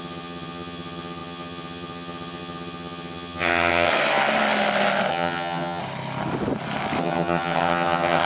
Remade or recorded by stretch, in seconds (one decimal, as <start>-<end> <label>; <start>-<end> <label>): 0.0-3.9 remade; 3.9-5.1 recorded; 5.1-5.8 remade; 5.8-7.0 recorded; 7.0-8.3 remade